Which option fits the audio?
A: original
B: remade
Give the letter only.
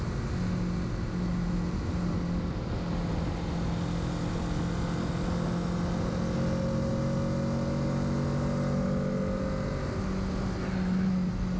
A